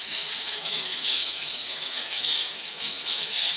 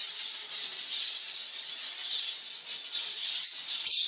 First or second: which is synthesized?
first